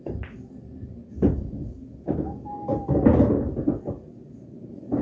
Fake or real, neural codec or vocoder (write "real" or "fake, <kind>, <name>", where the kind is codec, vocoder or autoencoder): real